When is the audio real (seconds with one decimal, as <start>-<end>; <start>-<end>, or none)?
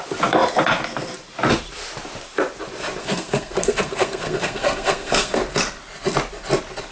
0.0-3.0; 5.4-6.9